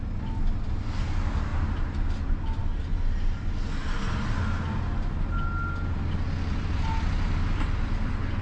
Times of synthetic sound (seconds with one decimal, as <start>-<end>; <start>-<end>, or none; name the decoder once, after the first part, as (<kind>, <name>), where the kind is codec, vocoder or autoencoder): none